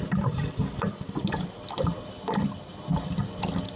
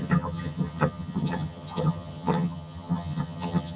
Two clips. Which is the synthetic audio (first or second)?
second